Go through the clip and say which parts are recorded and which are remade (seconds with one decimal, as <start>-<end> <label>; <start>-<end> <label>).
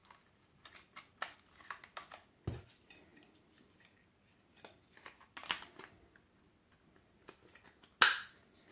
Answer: 0.0-8.7 recorded